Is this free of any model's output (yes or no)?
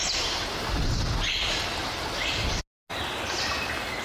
yes